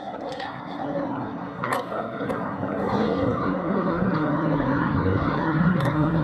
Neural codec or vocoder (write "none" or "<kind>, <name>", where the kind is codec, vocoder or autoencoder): codec, SNAC